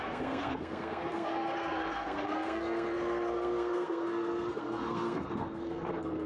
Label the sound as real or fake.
fake